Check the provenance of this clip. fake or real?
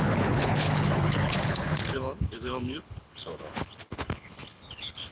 fake